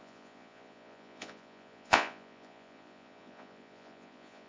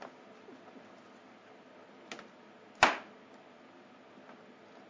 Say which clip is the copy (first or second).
first